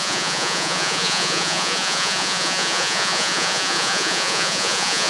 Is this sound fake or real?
fake